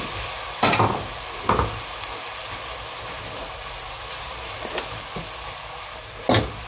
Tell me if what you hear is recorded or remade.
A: recorded